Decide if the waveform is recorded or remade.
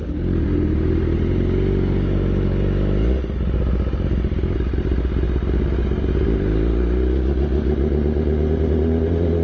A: recorded